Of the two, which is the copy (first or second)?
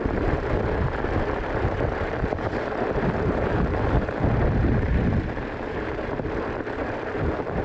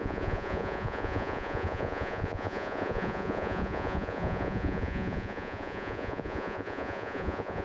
second